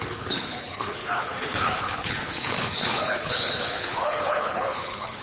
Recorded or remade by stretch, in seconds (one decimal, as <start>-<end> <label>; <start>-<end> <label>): 0.0-5.2 remade